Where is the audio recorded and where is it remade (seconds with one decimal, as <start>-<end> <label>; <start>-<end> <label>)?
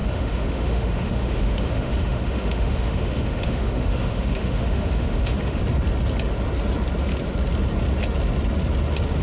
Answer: 0.0-5.6 remade; 5.6-9.2 recorded